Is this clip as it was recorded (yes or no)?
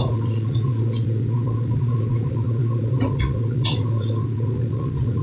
no